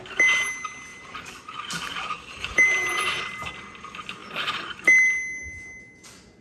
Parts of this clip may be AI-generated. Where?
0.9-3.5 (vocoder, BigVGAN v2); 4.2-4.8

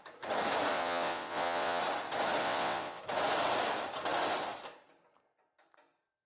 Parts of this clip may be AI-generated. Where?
0.7-1.8 (vocoder, WaveNeXt); 2.4-3.0